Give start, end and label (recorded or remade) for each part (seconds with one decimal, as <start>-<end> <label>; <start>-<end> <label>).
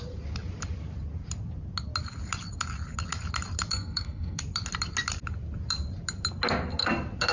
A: 0.0-3.7 recorded; 3.7-4.4 remade; 4.4-7.3 recorded